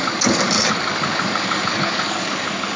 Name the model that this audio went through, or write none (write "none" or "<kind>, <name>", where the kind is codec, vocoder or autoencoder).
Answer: codec, DAC